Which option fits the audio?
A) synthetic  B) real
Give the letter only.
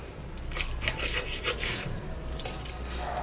B